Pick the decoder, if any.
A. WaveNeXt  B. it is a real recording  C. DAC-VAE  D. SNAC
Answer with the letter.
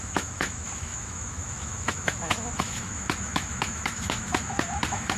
C